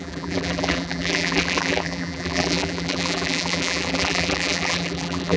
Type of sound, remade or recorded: remade